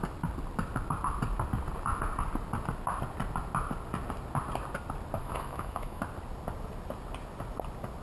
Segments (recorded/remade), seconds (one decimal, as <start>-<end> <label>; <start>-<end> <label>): 0.0-5.2 recorded; 5.2-6.0 remade; 6.0-8.0 recorded